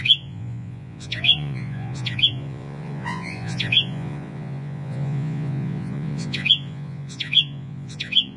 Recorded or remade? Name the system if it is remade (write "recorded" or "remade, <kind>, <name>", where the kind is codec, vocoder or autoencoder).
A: remade, vocoder, Vocos